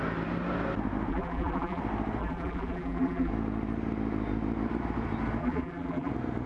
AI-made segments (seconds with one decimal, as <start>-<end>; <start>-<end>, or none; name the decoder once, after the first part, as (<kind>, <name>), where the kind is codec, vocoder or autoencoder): 1.1-1.8 (vocoder, BigVGAN v2); 2.2-3.3; 5.4-6.1